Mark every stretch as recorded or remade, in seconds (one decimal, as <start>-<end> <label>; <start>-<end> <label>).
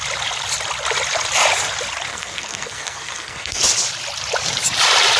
0.0-2.1 recorded; 2.1-3.6 remade; 3.6-5.2 recorded